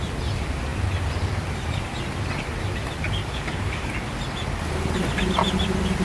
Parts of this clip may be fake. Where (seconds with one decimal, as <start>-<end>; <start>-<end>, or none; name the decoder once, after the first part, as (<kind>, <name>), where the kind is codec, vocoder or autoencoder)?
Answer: 3.2-3.9 (codec, DAC)